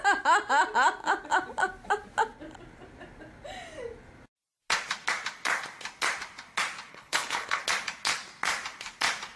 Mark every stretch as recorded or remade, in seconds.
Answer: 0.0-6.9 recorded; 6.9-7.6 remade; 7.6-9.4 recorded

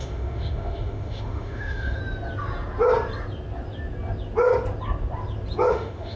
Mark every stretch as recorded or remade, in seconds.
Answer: 0.0-2.0 remade; 2.0-5.7 recorded; 5.7-6.2 remade